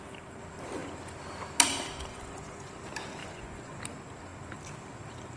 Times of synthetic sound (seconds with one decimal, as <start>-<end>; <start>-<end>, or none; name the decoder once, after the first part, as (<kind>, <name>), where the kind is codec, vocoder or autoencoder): 2.1-2.7 (vocoder, Vocos); 3.2-3.8